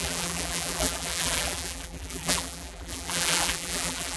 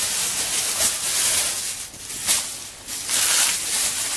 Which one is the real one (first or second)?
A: second